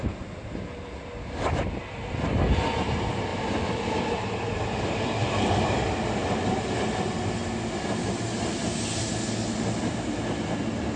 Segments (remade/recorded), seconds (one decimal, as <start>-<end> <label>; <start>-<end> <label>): 0.0-11.0 recorded